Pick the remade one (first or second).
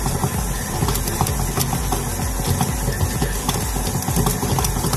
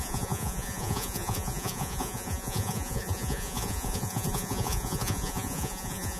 second